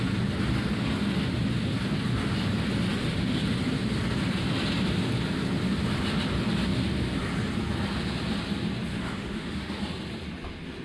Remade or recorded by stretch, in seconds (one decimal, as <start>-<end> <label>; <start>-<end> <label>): 0.0-8.9 recorded; 8.9-9.8 remade; 9.8-10.8 recorded